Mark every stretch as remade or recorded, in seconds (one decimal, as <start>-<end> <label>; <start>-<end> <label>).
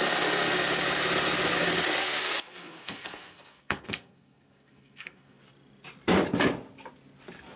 0.0-2.0 recorded; 2.0-5.4 remade; 5.4-7.6 recorded